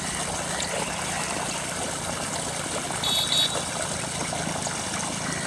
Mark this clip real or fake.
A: real